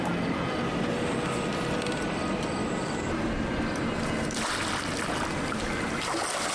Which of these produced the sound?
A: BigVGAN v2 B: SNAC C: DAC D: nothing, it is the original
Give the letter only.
D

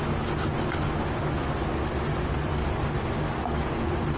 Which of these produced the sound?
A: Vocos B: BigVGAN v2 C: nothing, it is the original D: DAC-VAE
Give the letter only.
C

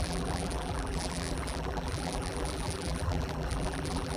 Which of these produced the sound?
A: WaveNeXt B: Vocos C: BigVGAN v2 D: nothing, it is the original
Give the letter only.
C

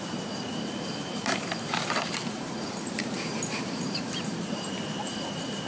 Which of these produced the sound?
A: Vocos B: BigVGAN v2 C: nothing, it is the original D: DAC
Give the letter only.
B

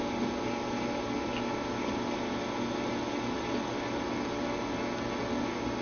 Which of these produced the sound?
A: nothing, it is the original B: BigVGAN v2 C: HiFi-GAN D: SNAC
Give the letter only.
A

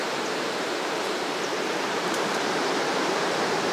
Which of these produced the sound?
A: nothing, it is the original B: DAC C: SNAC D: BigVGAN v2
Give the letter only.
D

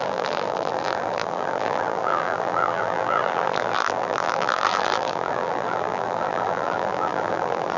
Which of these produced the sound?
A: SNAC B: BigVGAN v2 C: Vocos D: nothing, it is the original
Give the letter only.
B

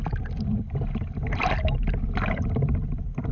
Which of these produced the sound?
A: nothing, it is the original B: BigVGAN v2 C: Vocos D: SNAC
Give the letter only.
B